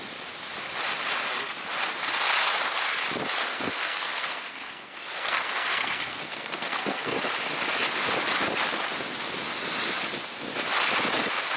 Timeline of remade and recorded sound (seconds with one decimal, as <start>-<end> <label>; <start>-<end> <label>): 0.0-3.5 recorded; 3.5-7.2 remade; 7.2-11.6 recorded